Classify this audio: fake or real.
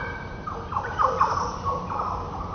real